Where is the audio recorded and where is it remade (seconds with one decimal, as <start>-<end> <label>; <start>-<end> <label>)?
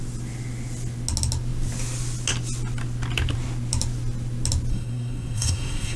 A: 0.0-4.7 recorded; 4.7-6.0 remade